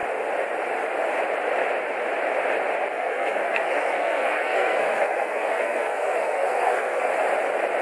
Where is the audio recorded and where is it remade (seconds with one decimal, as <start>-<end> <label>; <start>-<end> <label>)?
0.0-2.9 recorded; 2.9-7.1 remade; 7.1-7.8 recorded